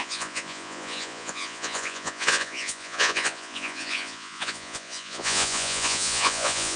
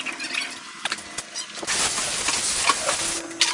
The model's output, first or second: first